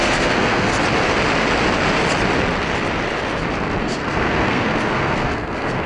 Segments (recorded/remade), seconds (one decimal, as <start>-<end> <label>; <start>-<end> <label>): 0.0-0.7 remade; 0.7-3.8 recorded; 3.8-5.9 remade